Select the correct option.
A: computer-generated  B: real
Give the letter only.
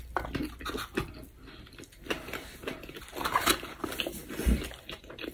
B